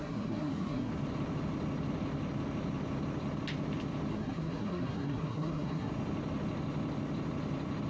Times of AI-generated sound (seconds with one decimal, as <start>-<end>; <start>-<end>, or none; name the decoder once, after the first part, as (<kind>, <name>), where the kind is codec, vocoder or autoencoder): 0.0-0.9 (codec, SNAC); 4.1-5.9